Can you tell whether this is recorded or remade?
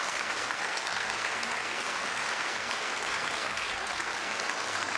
remade